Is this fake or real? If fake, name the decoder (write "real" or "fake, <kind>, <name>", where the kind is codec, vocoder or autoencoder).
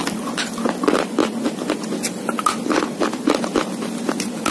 real